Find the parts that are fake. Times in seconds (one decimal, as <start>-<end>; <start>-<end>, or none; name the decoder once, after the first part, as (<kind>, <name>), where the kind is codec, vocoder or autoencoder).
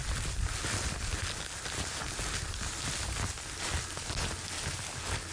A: none